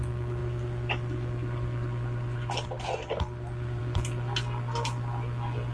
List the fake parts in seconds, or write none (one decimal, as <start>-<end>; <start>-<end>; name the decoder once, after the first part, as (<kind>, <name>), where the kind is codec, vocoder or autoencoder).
0.4-3.8 (vocoder, BigVGAN v2)